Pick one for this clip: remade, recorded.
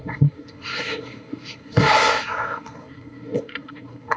remade